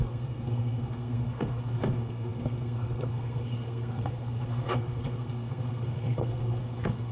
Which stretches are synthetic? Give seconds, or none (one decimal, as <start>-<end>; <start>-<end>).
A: 0.0-7.1

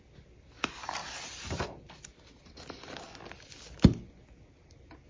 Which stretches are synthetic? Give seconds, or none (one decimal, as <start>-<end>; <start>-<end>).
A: none

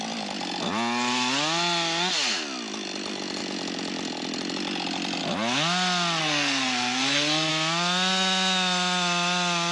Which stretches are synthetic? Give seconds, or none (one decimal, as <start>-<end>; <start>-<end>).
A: 6.2-7.5